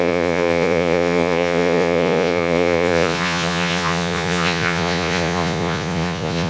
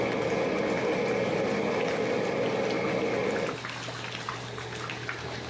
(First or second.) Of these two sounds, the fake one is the first